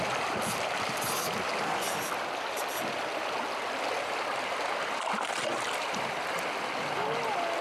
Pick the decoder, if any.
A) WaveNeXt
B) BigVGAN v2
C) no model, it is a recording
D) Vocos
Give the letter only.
C